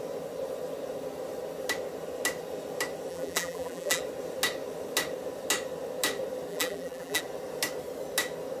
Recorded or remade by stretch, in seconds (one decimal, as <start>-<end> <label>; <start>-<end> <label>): 0.0-3.1 recorded; 3.1-4.0 remade; 4.0-6.5 recorded; 6.5-7.2 remade; 7.2-8.6 recorded